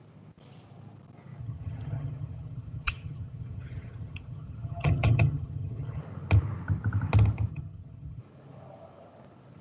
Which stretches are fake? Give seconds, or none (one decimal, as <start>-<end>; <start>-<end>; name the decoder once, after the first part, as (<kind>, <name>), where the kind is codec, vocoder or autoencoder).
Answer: 1.4-6.0 (vocoder, HiFi-GAN); 7.5-8.2